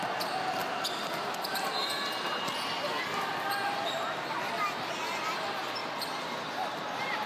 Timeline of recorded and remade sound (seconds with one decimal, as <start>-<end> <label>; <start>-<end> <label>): 0.0-7.3 recorded